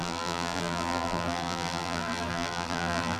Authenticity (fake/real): fake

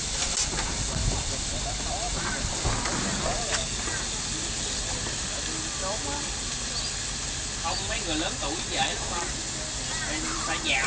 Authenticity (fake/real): real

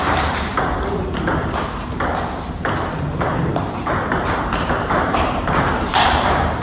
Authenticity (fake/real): fake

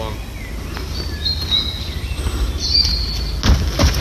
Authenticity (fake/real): real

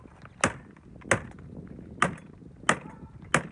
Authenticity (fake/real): real